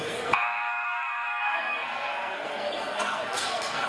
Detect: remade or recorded remade